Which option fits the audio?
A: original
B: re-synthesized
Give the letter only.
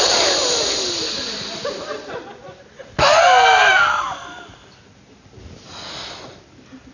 A